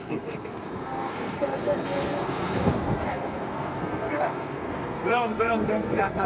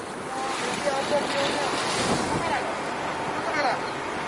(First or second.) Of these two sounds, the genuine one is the second